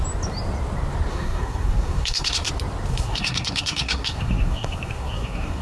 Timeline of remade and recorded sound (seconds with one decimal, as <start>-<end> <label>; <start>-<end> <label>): 0.0-1.1 recorded; 1.1-2.5 remade; 2.5-2.9 recorded; 2.9-5.6 remade